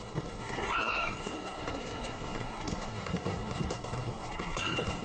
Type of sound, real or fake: fake